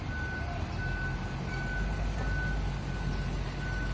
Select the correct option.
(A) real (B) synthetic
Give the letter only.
A